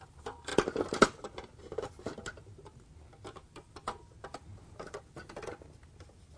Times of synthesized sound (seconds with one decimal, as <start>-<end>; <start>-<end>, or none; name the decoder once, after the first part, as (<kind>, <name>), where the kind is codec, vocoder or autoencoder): none